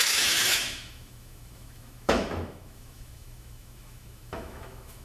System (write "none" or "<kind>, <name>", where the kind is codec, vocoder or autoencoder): autoencoder, DAC-VAE